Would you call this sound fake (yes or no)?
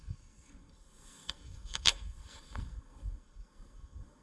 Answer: yes